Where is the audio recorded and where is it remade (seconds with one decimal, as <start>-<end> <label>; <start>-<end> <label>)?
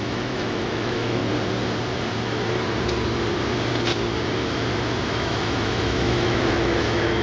0.0-1.2 remade; 1.2-5.1 recorded; 5.1-7.2 remade